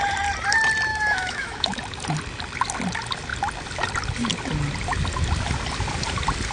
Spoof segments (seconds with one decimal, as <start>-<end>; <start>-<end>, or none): 0.9-1.8